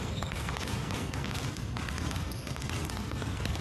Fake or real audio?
fake